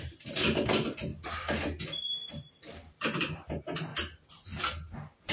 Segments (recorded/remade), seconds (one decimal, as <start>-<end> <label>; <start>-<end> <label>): 0.0-5.3 recorded